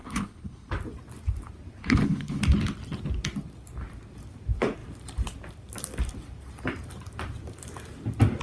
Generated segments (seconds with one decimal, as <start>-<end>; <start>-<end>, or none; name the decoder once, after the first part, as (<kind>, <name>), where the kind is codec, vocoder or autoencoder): 0.0-0.7 (codec, HILCodec); 1.8-2.4